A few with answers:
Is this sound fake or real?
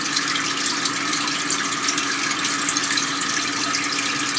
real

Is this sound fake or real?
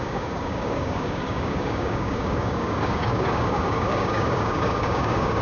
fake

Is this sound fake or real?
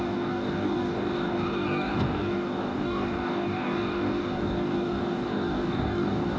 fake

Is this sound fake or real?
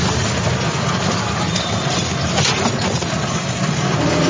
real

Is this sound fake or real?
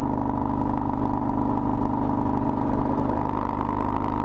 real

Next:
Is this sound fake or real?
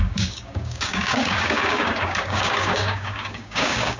fake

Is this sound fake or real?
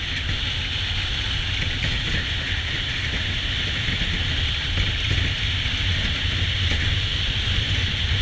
real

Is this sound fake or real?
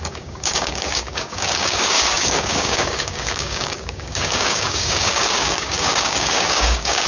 fake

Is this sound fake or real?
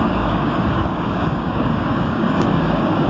fake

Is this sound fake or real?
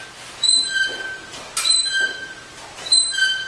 real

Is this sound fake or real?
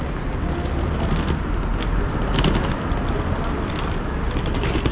real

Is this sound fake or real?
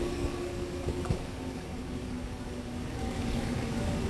fake